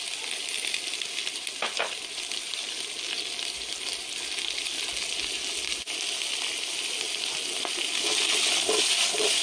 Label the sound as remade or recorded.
recorded